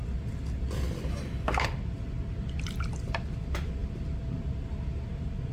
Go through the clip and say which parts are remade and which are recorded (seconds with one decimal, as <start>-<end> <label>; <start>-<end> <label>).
0.0-5.5 recorded